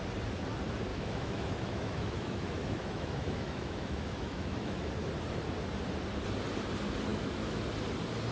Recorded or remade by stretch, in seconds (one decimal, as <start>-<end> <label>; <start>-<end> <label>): 0.0-0.9 recorded; 0.9-4.9 remade; 4.9-7.1 recorded; 7.1-7.6 remade; 7.6-8.3 recorded

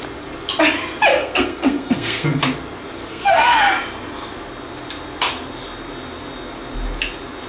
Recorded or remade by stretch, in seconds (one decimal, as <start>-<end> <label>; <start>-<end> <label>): 0.0-1.1 recorded; 1.1-2.4 remade; 2.4-3.1 recorded; 3.1-3.6 remade; 3.6-7.5 recorded

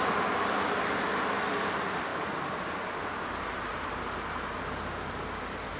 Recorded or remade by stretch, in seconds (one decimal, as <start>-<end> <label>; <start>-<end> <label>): 0.0-5.8 recorded

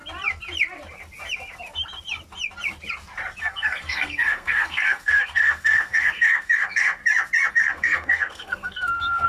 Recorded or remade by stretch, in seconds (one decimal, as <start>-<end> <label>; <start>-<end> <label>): 0.0-3.4 recorded; 3.4-7.0 remade; 7.0-7.5 recorded; 7.5-9.3 remade

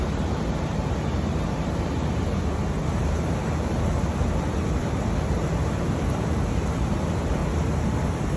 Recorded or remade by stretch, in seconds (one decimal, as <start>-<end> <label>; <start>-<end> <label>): 0.0-7.4 remade; 7.4-8.0 recorded; 8.0-8.4 remade

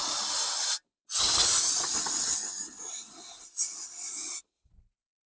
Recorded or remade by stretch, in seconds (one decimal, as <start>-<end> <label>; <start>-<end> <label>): 0.0-5.3 recorded